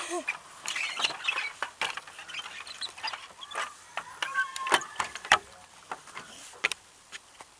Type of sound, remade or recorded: remade